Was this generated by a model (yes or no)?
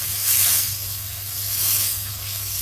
yes